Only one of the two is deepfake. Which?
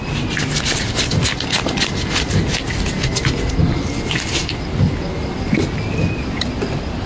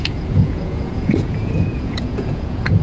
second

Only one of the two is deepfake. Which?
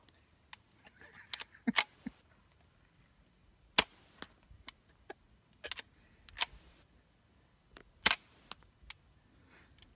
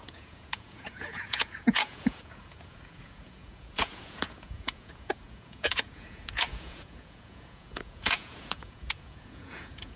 second